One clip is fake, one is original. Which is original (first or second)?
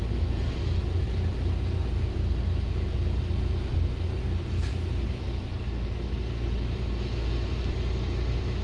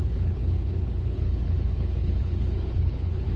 first